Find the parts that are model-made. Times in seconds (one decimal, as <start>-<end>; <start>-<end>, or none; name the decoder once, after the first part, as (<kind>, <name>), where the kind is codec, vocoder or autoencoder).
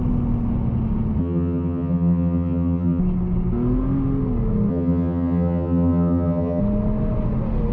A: 1.2-3.0 (vocoder, HiFi-GAN); 4.7-6.6